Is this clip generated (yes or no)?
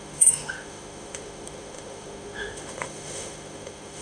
yes